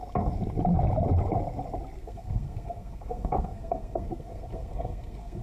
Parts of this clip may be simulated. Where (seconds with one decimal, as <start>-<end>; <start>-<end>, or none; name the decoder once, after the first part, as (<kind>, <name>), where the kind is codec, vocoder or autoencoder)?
2.0-5.4 (codec, SNAC)